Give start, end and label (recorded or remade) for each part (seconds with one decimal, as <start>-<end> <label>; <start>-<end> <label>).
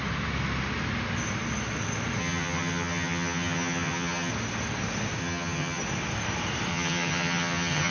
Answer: 0.0-2.2 recorded; 2.2-4.3 remade; 4.3-5.2 recorded; 5.2-5.8 remade; 5.8-6.7 recorded; 6.7-7.9 remade